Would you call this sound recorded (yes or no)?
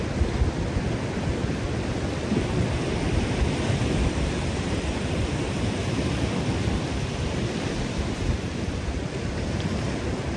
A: no